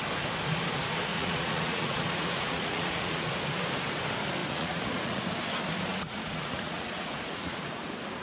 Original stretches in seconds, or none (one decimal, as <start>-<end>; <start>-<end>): 0.0-1.1; 3.3-4.4; 5.2-5.9; 7.7-8.2